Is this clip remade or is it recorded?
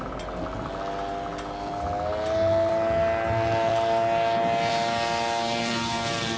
recorded